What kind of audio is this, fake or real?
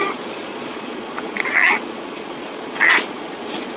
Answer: fake